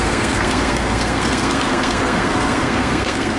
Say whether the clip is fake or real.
fake